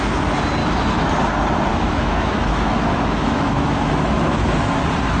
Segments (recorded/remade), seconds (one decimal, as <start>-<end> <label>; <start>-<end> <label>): 0.0-0.6 recorded; 0.6-1.1 remade; 1.1-1.7 recorded; 1.7-4.8 remade; 4.8-5.2 recorded